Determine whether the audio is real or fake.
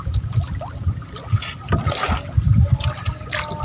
real